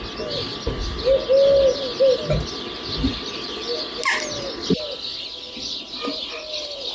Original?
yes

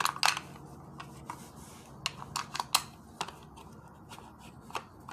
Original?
yes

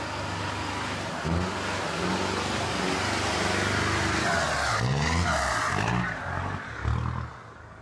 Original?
yes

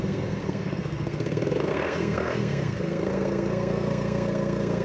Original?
no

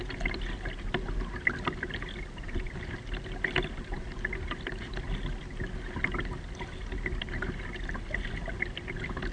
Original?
yes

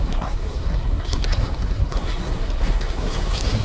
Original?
no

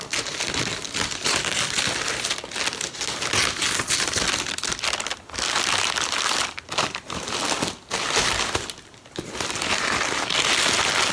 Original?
yes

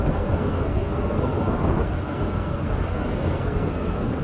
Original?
no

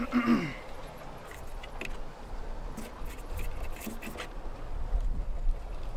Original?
yes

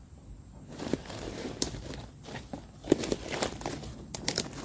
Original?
yes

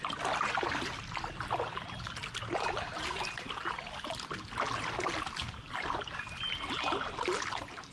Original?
yes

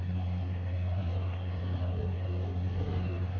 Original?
no